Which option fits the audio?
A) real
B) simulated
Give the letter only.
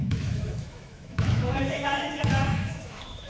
B